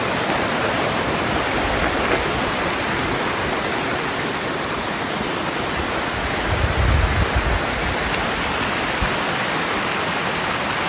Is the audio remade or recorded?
recorded